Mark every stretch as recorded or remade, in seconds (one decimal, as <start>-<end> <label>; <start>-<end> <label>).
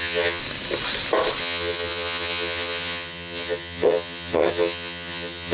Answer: 0.0-0.4 remade; 0.4-1.4 recorded; 1.4-5.5 remade